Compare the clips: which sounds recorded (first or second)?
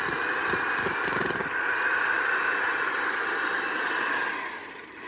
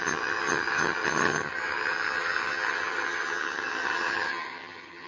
first